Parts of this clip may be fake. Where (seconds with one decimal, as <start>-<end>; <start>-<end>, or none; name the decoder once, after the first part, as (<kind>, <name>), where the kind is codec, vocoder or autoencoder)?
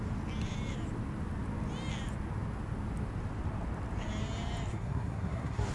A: 4.7-5.7 (codec, SNAC)